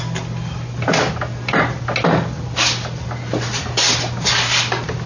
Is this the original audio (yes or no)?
yes